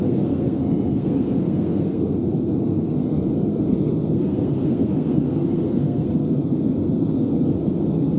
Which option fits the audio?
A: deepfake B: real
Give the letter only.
A